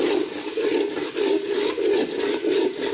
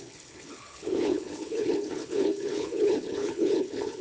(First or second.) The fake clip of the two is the second